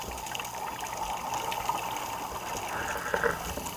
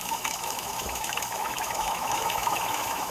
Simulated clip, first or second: second